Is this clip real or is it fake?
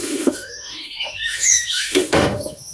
fake